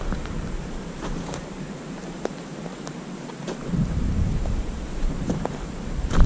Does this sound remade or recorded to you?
remade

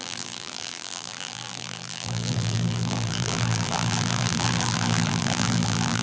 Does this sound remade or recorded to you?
remade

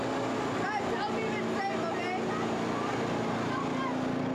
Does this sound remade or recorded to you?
recorded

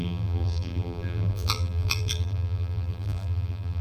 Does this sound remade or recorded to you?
remade